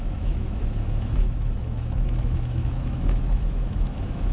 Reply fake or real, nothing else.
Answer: fake